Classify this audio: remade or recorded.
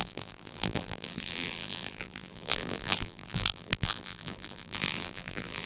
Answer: remade